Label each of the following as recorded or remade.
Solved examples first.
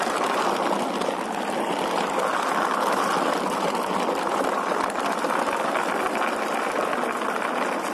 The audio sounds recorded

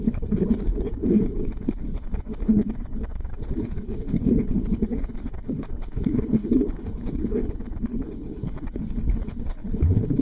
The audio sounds remade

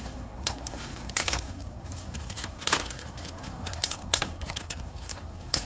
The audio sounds remade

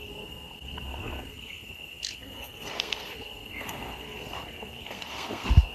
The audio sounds remade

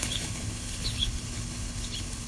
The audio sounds remade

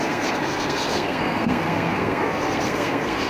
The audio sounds remade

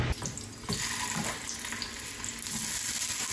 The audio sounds recorded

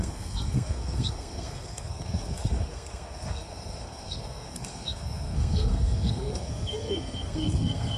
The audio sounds remade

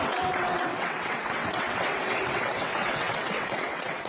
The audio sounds remade